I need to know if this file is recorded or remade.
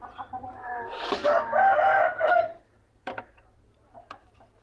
remade